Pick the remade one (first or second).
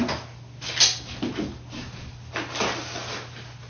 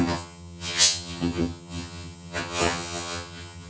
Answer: second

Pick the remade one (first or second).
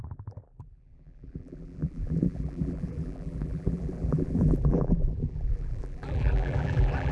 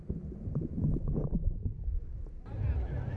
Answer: first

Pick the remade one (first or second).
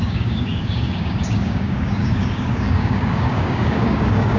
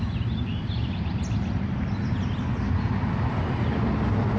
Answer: first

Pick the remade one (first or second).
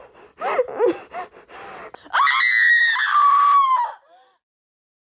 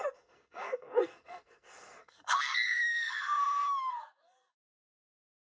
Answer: second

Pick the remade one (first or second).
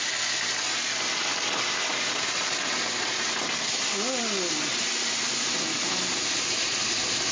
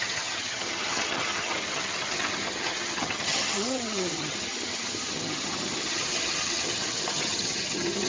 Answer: second